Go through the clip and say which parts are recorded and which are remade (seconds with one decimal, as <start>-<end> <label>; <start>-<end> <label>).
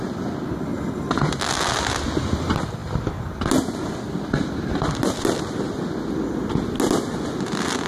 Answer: 0.0-0.7 recorded; 0.7-1.4 remade; 1.4-7.9 recorded